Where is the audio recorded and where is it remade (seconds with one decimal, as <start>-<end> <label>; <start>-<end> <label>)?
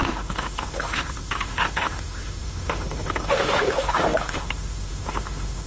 0.0-5.7 remade